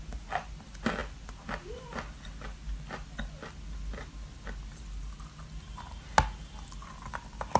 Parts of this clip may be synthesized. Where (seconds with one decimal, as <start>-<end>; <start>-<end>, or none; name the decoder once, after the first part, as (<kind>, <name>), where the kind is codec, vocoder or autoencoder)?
none